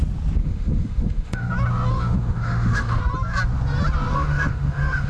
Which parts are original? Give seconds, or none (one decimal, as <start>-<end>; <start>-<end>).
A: 0.0-0.4; 1.5-1.9; 3.0-4.1